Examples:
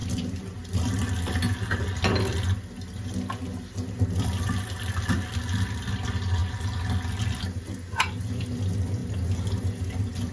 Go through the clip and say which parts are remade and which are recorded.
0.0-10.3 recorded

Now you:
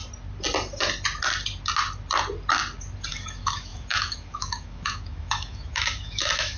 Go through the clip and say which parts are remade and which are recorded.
0.0-3.1 recorded; 3.1-6.6 remade

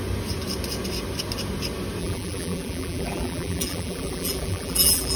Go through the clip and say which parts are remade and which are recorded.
0.0-2.0 recorded; 2.0-5.2 remade